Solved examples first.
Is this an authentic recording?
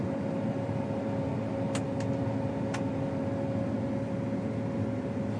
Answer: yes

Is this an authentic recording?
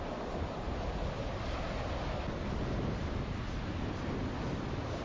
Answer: yes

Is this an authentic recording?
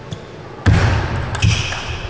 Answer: yes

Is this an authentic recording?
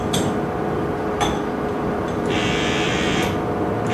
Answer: no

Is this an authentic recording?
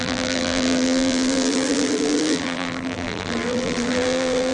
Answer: no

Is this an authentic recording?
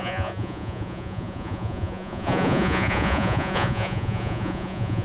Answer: no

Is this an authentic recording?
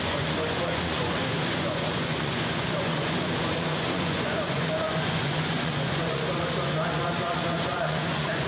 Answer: no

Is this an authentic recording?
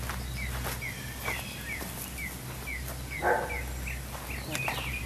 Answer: yes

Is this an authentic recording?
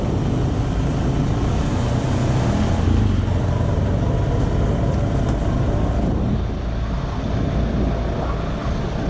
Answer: yes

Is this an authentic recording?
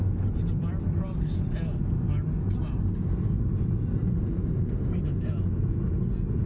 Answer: yes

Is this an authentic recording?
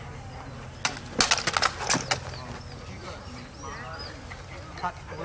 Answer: yes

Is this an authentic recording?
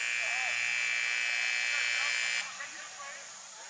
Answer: yes